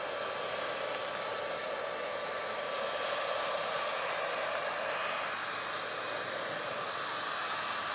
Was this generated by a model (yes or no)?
no